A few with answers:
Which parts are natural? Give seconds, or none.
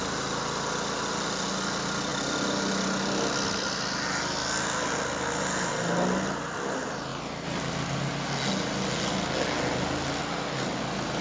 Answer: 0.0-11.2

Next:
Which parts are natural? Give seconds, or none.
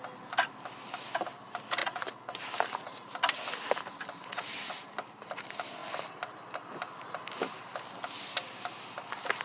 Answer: 0.0-1.8; 2.4-4.2; 4.7-9.4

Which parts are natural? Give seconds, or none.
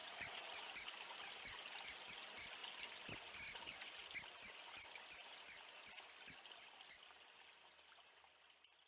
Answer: 0.7-8.9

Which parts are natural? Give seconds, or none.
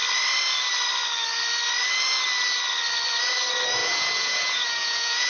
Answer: 0.0-3.8